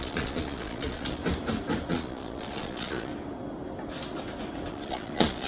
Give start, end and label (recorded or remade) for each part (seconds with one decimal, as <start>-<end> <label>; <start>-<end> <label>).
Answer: 0.0-1.2 remade; 1.2-1.9 recorded; 1.9-3.1 remade; 3.1-4.7 recorded; 4.7-5.5 remade